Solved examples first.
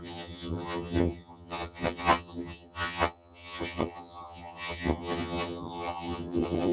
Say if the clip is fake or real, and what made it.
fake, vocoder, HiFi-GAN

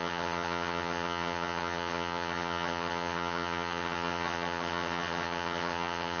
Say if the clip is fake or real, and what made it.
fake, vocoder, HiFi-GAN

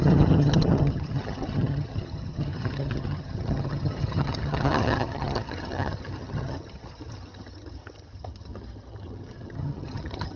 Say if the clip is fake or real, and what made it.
fake, vocoder, HiFi-GAN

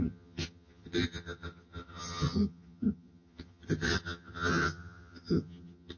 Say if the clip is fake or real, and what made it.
fake, vocoder, HiFi-GAN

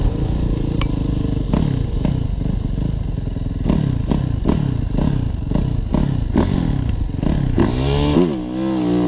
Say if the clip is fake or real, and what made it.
real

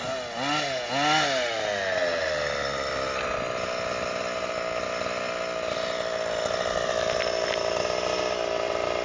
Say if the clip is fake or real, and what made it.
real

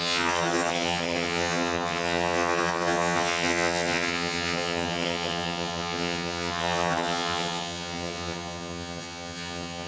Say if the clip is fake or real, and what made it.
fake, vocoder, HiFi-GAN